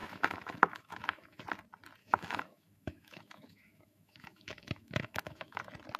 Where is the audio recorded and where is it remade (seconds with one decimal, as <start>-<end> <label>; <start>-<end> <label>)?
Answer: 0.0-1.4 remade; 1.4-2.0 recorded; 2.0-5.6 remade; 5.6-6.0 recorded

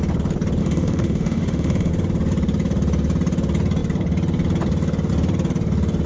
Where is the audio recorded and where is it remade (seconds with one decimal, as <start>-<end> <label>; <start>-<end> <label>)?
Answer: 0.0-0.6 recorded; 0.6-1.9 remade; 1.9-6.1 recorded

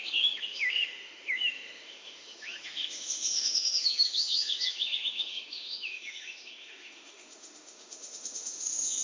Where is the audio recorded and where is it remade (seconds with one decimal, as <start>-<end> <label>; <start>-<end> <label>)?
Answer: 0.0-9.0 remade

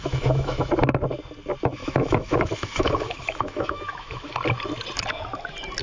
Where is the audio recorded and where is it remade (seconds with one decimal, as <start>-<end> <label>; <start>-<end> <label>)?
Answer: 0.0-0.7 remade; 0.7-1.8 recorded; 1.8-4.3 remade; 4.3-5.8 recorded